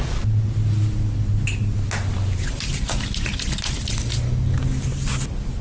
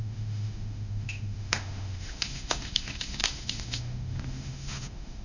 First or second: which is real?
first